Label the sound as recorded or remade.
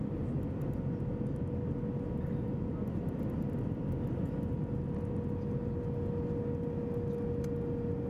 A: recorded